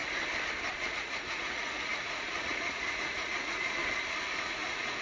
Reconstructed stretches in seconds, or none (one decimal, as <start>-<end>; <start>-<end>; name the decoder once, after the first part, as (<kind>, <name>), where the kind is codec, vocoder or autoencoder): 0.8-3.8 (vocoder, Vocos); 4.4-5.0